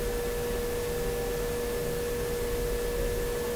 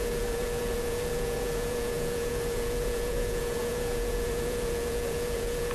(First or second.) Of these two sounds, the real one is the first